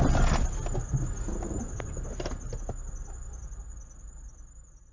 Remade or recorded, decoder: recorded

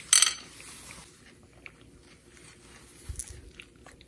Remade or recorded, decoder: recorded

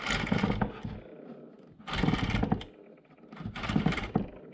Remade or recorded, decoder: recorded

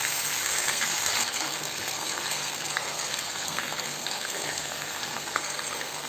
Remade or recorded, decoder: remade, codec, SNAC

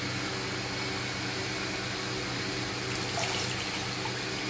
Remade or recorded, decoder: recorded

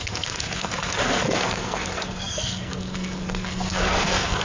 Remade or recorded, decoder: remade, codec, SNAC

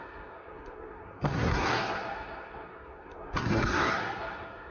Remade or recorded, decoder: remade, codec, SNAC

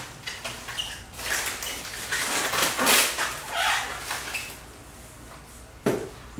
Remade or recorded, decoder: recorded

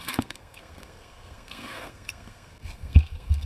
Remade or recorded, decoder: remade, codec, SNAC